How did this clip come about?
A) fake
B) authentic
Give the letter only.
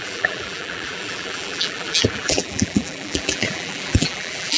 A